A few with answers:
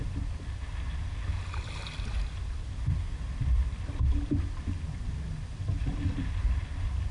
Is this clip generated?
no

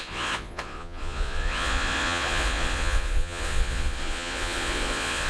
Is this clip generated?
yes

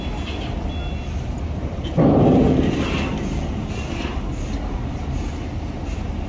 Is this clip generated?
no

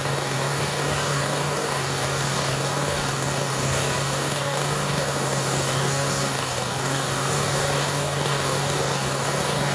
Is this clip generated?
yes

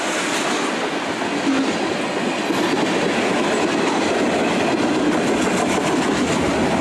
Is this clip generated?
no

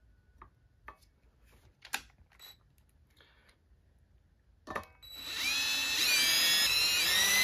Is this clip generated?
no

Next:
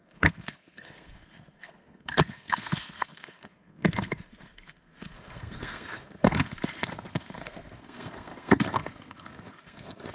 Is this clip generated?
yes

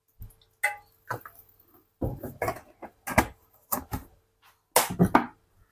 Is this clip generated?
no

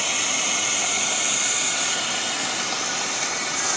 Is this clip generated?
no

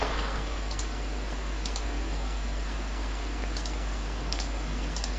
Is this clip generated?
yes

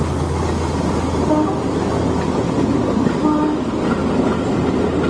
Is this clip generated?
no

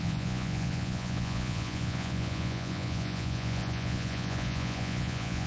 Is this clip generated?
yes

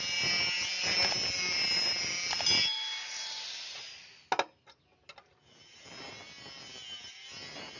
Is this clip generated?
no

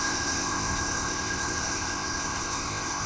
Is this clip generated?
yes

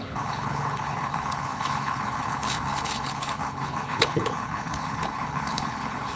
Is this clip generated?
yes